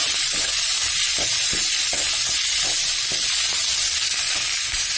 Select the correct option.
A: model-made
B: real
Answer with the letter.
B